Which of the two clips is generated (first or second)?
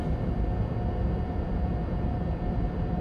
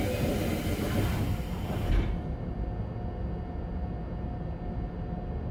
first